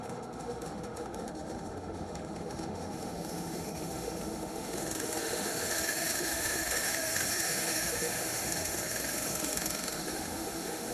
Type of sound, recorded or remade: remade